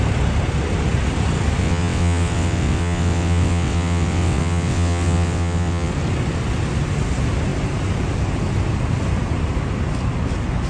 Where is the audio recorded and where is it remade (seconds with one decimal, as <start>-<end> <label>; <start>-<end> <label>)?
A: 0.0-1.6 recorded; 1.6-5.9 remade; 5.9-10.7 recorded